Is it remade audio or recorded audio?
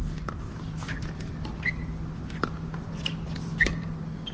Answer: recorded